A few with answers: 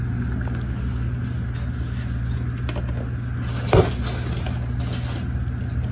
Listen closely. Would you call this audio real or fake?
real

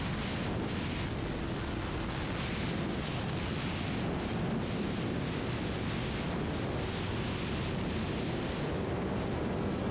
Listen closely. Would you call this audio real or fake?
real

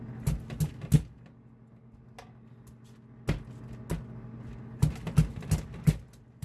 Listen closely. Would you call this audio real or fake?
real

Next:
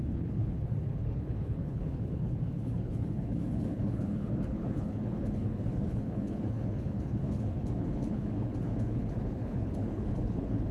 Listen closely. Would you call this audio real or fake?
fake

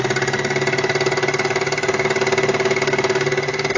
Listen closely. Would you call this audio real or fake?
real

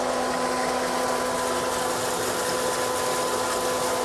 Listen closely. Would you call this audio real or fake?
real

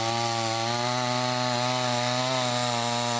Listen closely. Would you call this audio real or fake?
real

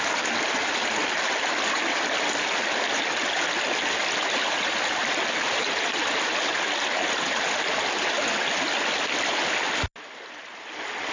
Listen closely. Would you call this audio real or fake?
real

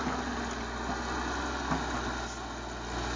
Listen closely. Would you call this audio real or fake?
real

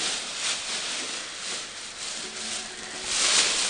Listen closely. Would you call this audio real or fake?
real